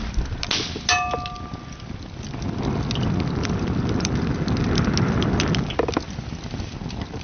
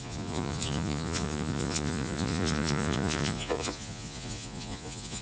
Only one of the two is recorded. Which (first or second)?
first